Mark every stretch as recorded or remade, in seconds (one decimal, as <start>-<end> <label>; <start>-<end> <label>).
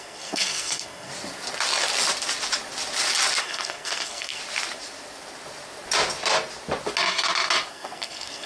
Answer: 0.0-1.1 remade; 1.1-3.4 recorded; 3.4-4.4 remade; 4.4-7.7 recorded; 7.7-8.5 remade